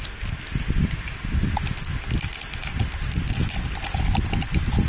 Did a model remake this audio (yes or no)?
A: no